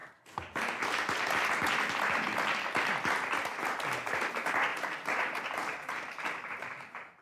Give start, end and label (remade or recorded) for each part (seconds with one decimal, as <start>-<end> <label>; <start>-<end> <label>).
0.0-4.7 recorded; 4.7-7.2 remade